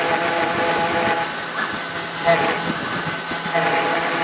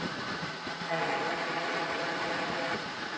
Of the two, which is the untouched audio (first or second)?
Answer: first